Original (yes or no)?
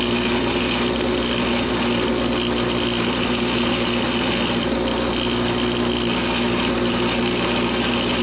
yes